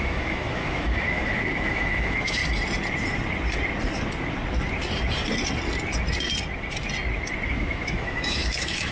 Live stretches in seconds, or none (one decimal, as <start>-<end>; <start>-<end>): 2.4-7.5